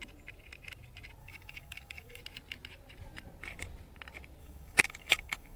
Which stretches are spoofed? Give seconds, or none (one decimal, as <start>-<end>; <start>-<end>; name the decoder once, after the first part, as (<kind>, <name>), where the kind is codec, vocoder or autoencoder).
1.2-2.2 (codec, DAC); 4.4-5.6